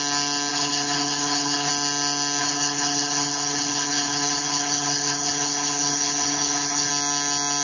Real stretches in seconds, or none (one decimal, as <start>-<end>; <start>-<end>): 0.0-0.5; 1.7-2.4; 6.9-7.6